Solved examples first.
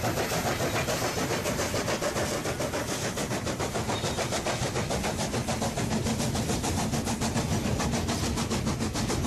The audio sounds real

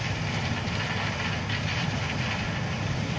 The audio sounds real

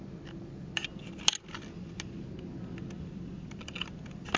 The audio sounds real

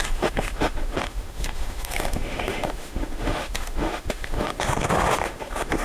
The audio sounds fake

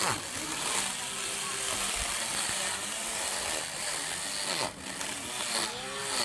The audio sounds real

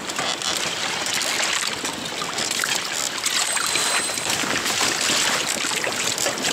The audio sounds real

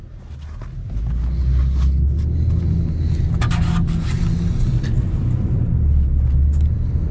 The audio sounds real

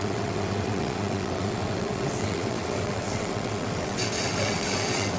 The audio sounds fake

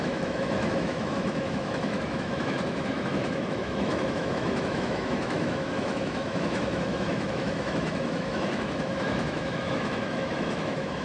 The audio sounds fake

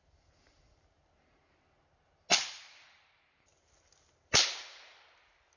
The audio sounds real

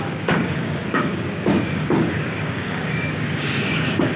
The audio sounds fake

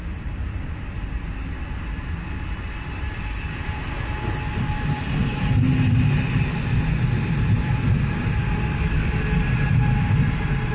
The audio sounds real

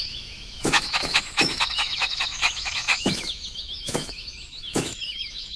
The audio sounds fake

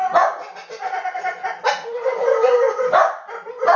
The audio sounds real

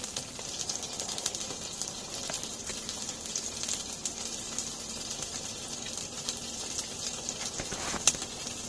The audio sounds real